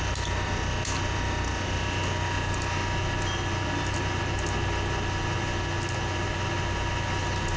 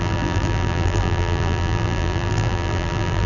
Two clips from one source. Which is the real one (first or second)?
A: first